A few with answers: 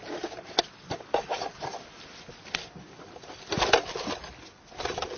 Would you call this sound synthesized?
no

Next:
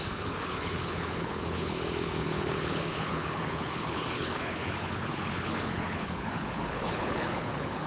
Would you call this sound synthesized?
yes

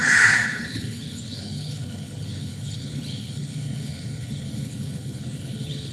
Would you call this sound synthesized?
yes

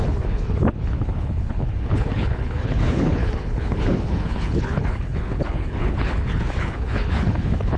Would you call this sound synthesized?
yes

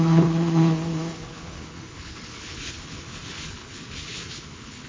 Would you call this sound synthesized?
yes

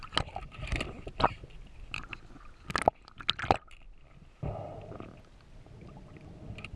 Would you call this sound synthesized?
no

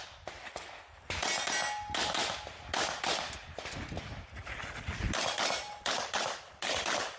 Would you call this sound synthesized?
no